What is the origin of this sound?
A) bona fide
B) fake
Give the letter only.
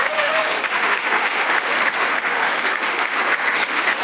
B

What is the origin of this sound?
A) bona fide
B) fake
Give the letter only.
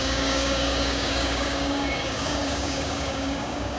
B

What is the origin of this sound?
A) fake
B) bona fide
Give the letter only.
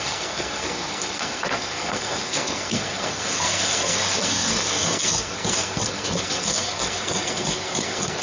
A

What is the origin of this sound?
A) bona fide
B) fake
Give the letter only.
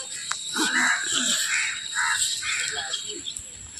A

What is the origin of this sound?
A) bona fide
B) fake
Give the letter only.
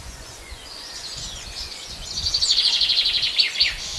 B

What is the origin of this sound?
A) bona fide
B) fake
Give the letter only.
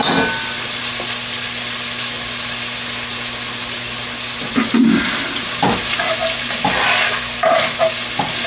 A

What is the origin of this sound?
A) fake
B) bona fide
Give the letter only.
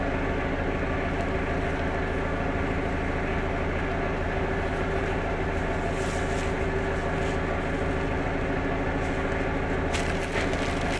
B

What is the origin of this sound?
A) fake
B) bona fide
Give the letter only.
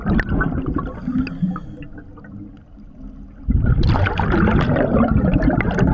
B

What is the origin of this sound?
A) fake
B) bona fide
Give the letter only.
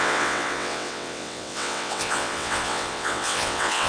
A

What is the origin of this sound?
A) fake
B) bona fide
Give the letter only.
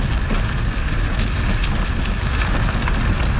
B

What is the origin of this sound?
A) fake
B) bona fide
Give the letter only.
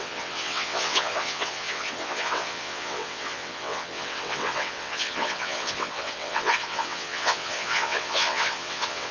A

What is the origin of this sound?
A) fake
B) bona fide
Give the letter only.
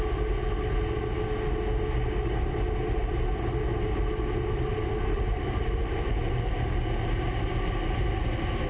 B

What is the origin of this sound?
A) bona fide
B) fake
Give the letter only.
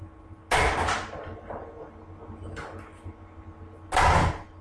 A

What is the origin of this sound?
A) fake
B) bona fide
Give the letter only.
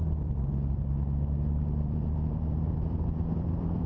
A